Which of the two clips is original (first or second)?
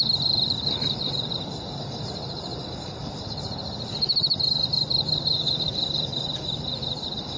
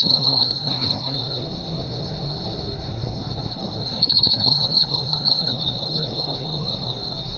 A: first